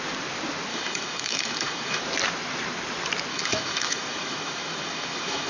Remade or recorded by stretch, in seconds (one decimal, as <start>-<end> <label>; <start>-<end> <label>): 0.0-0.7 recorded; 0.7-2.0 remade; 2.0-3.3 recorded; 3.3-5.5 remade